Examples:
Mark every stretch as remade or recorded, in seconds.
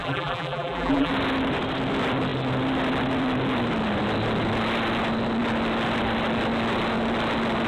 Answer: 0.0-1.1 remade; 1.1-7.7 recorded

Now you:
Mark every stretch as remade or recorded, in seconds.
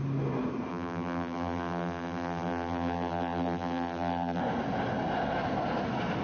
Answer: 0.0-0.7 recorded; 0.7-4.4 remade; 4.4-6.2 recorded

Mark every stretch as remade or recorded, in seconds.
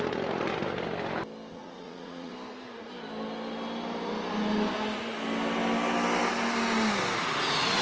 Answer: 0.0-1.5 recorded; 1.5-2.3 remade; 2.3-7.8 recorded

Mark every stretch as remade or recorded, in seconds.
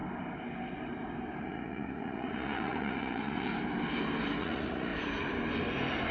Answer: 0.0-1.4 recorded; 1.4-3.5 remade; 3.5-4.4 recorded; 4.4-4.9 remade; 4.9-6.1 recorded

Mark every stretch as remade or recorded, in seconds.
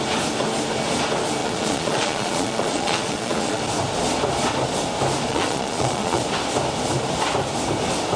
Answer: 0.0-1.4 recorded; 1.4-3.6 remade; 3.6-5.3 recorded; 5.3-6.2 remade; 6.2-8.2 recorded